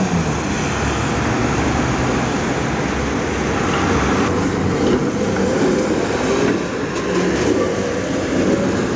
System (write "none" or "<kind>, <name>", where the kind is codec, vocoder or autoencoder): none